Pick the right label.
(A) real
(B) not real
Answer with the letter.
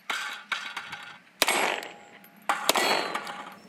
A